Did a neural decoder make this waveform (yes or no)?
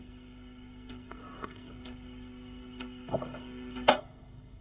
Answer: yes